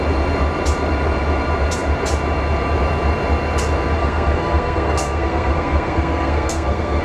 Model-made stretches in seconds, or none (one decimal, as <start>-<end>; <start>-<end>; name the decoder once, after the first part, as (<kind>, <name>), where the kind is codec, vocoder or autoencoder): 4.0-7.0 (codec, SNAC)